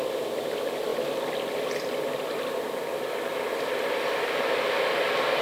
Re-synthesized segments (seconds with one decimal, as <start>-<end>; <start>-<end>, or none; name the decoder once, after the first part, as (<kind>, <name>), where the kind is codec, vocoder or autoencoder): none

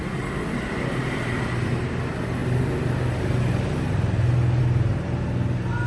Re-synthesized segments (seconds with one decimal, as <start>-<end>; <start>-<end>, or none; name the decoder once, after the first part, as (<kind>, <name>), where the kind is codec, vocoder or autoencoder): none

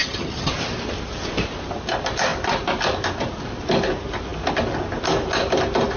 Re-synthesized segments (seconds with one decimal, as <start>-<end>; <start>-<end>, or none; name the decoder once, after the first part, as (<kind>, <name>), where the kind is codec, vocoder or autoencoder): 0.0-0.5 (vocoder, HiFi-GAN)

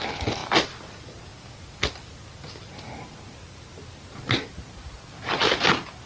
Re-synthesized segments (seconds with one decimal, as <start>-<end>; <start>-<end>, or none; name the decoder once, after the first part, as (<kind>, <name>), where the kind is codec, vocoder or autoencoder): none

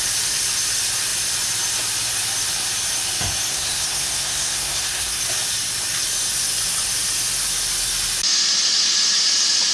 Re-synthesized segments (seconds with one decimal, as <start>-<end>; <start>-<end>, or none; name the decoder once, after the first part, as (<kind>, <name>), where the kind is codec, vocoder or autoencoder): 3.5-5.2 (codec, SNAC)

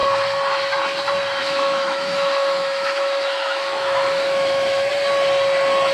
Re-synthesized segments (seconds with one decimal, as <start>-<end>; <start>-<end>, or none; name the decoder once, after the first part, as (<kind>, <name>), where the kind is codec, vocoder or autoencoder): 1.4-4.9 (autoencoder, DAC-VAE)